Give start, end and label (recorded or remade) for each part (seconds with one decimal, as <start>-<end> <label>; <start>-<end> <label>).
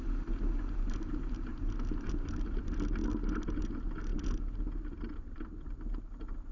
0.0-6.5 recorded